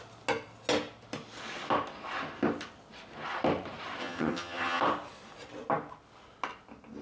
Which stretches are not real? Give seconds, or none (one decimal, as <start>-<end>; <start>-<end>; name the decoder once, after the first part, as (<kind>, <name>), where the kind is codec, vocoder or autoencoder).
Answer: 4.0-4.8 (vocoder, HiFi-GAN)